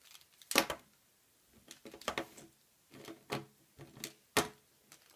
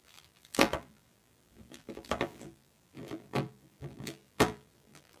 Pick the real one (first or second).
first